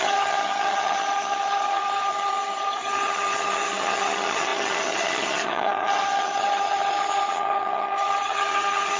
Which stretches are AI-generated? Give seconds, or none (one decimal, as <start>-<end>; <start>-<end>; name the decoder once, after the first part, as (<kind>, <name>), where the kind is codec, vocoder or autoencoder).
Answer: 0.0-9.0 (vocoder, HiFi-GAN)